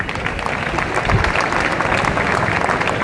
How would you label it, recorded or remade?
recorded